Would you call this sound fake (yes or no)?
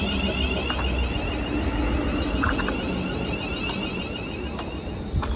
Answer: no